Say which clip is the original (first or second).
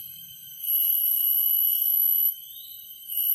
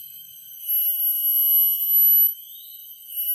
second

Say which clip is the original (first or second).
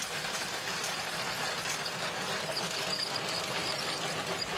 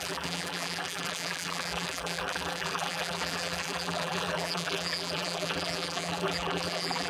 first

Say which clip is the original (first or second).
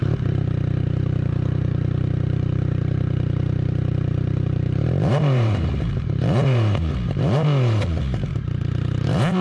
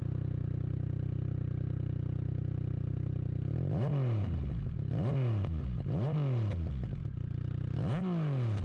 second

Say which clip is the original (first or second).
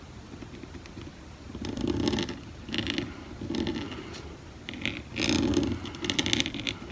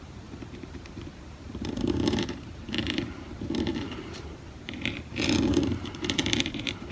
first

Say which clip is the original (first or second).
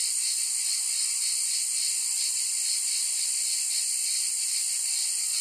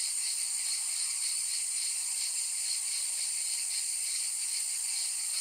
first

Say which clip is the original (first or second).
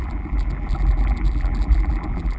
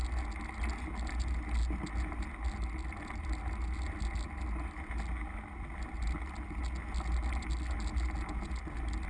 second